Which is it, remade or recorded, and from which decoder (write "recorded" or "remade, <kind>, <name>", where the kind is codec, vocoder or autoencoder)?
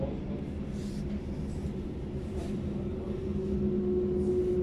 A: recorded